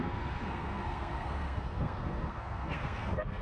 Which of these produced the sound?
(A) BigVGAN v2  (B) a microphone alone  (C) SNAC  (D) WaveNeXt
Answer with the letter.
C